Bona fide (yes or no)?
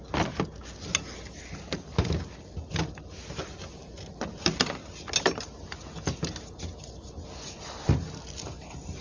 yes